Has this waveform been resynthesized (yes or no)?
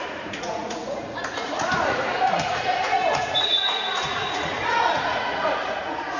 yes